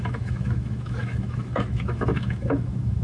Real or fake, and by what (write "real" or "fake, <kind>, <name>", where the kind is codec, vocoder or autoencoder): fake, autoencoder, DAC-VAE